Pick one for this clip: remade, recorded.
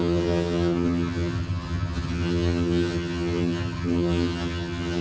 remade